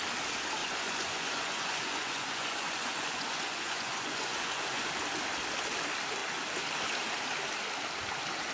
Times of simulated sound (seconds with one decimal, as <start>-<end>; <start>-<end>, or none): 0.6-4.9